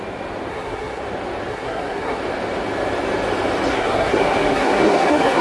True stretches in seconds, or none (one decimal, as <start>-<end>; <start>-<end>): 0.0-0.5; 1.0-1.5; 2.2-3.7

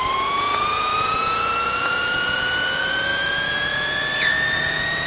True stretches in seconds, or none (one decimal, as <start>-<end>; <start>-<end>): none

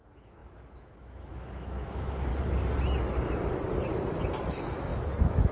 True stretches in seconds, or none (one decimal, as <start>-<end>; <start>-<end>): 2.3-4.5

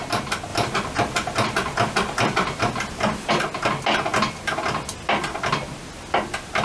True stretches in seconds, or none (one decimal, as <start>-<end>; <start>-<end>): 0.0-6.6